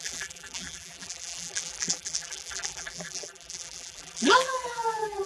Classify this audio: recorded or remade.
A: remade